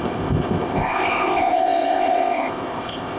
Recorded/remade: remade